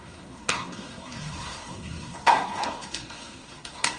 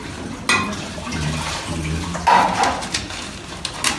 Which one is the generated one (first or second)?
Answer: first